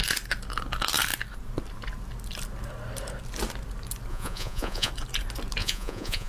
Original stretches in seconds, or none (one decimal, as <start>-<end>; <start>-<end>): 0.0-4.1; 4.9-5.6